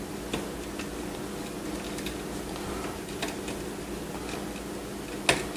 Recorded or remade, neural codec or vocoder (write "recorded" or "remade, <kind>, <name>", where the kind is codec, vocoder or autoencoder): recorded